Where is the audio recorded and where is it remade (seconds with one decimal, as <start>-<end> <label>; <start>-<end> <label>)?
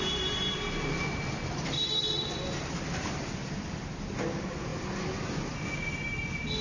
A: 0.0-6.6 recorded